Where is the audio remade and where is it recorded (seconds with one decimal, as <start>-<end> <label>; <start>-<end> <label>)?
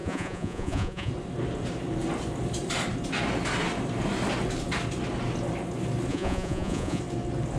0.0-1.1 remade; 1.1-6.1 recorded; 6.1-7.0 remade; 7.0-7.6 recorded